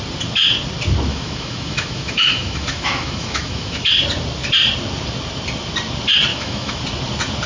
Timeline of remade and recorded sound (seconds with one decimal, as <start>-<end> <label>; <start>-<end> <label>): 0.0-1.1 recorded; 1.1-3.9 remade; 3.9-6.3 recorded; 6.3-6.8 remade; 6.8-7.5 recorded